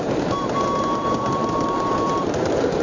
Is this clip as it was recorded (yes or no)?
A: no